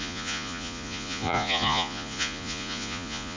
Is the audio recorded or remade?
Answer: remade